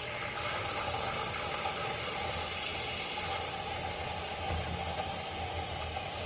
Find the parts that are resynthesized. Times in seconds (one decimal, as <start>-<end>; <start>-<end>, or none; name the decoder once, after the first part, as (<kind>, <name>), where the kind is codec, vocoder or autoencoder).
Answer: none